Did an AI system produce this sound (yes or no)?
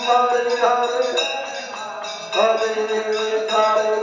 no